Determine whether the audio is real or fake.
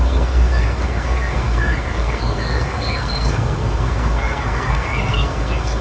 fake